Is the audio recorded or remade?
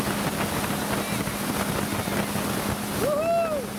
recorded